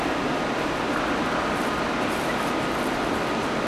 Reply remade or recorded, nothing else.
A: recorded